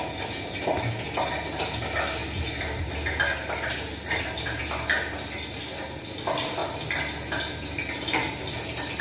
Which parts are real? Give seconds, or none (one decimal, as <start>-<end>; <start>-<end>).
0.0-9.0